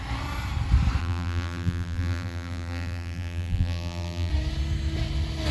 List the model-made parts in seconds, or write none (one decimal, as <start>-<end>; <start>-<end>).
1.0-4.3